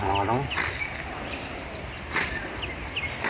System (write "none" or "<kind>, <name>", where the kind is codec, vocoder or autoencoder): none